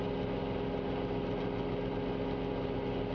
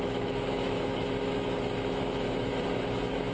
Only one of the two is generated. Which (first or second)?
second